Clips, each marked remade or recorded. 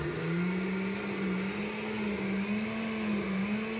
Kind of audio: recorded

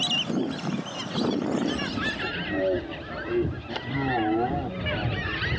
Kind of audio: recorded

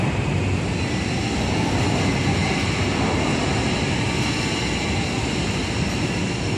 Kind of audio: recorded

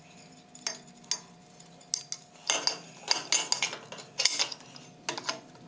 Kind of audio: recorded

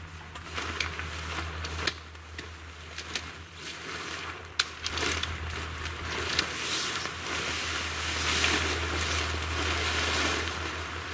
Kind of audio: recorded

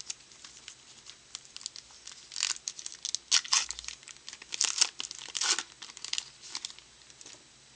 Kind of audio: recorded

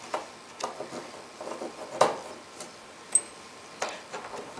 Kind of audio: recorded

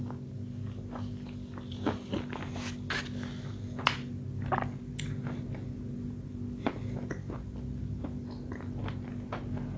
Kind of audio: recorded